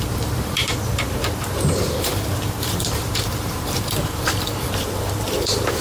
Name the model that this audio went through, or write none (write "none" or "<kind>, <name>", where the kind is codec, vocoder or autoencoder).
vocoder, BigVGAN v2